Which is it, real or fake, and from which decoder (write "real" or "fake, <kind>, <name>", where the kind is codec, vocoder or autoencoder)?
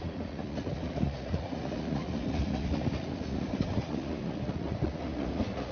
fake, vocoder, Vocos